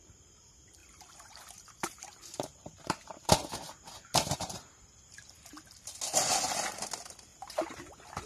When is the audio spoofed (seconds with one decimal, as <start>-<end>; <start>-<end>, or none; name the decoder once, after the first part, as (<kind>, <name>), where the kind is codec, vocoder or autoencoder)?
0.8-5.5 (vocoder, BigVGAN v2); 7.3-7.9